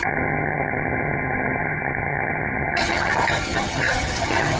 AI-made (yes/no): yes